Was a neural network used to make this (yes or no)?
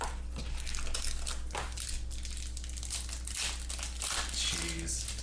no